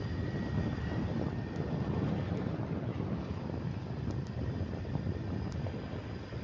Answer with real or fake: real